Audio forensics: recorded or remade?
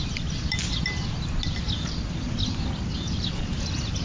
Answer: recorded